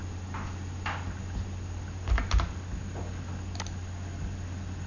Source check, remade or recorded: recorded